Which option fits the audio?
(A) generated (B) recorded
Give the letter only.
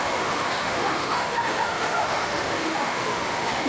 A